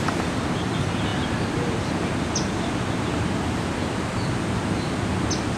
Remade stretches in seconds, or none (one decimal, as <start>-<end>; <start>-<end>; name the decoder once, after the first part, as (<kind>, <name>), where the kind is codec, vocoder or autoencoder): none